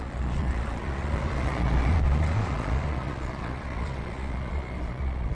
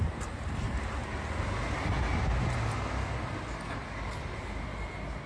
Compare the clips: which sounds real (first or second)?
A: second